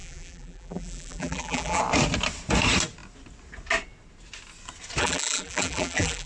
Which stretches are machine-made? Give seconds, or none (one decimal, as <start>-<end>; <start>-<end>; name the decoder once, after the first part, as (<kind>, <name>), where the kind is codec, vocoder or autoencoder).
0.0-1.8 (vocoder, BigVGAN v2); 5.0-6.3